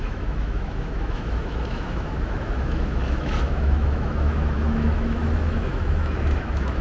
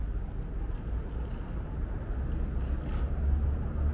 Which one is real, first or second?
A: second